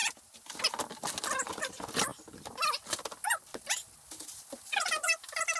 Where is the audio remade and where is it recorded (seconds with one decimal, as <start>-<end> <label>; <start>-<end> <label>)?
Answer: 0.0-5.6 recorded